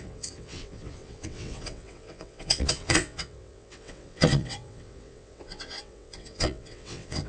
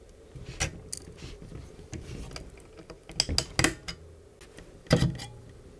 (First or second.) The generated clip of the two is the first